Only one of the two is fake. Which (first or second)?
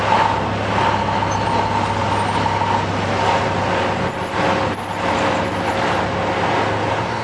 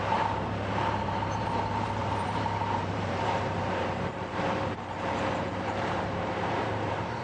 second